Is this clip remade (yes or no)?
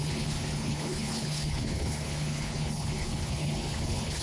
yes